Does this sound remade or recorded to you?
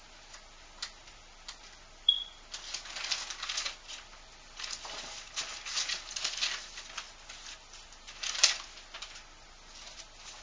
recorded